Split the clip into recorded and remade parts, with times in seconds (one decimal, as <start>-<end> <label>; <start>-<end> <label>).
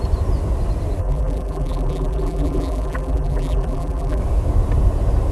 0.0-1.0 recorded; 1.0-4.2 remade; 4.2-5.3 recorded